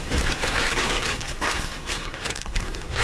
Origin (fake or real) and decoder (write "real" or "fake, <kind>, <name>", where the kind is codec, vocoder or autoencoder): fake, codec, SNAC